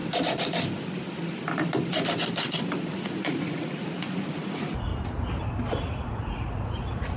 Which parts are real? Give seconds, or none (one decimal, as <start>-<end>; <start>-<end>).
0.0-2.9; 4.9-5.7